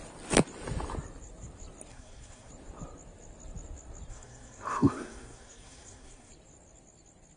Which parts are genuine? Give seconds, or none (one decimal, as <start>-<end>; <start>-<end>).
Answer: 0.0-1.9; 2.5-4.1; 6.3-7.4